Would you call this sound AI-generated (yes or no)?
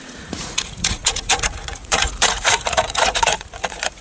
yes